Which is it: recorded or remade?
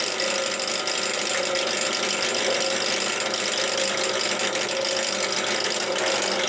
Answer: recorded